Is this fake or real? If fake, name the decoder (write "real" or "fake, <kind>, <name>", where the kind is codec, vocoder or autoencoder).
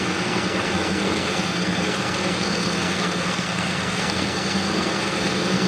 fake, codec, SNAC